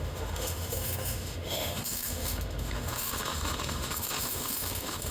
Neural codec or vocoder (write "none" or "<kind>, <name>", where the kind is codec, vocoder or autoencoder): autoencoder, DAC-VAE